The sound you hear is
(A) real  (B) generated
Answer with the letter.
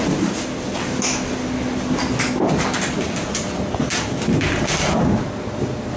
A